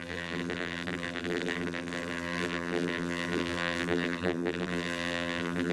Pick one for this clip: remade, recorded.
remade